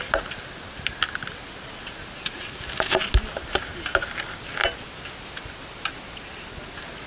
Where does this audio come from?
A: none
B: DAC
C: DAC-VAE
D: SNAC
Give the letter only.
A